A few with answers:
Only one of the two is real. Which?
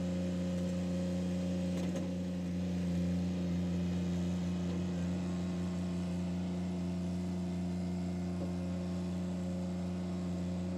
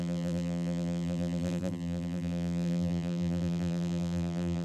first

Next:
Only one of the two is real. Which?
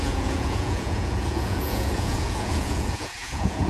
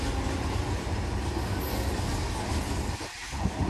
second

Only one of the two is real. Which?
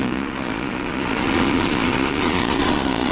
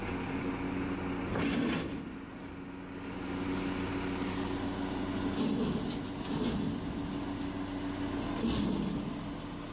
second